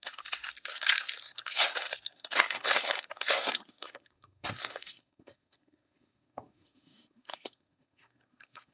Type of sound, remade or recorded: remade